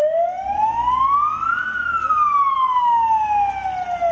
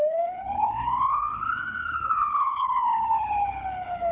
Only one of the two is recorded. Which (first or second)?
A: first